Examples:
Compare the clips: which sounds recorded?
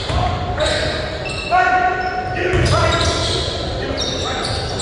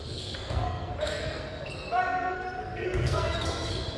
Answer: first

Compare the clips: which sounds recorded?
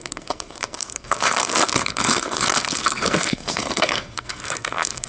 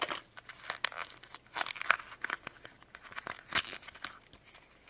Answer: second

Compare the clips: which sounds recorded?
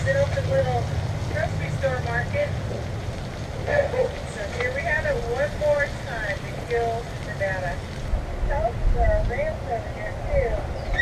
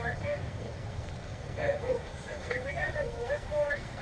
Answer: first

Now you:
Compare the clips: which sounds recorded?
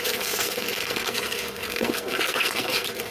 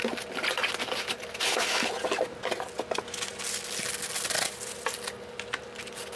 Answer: second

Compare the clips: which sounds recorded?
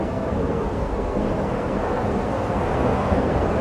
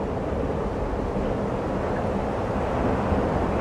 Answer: second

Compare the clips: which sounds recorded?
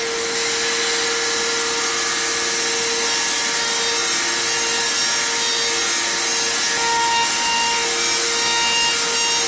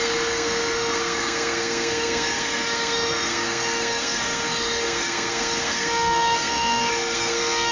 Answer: first